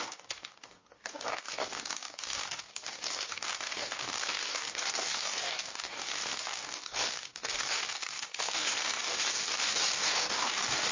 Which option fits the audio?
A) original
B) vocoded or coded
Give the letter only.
B